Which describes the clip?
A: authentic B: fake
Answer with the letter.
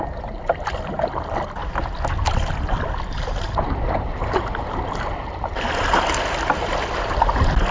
A